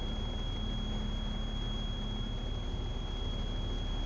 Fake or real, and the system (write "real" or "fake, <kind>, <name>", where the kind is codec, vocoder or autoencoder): real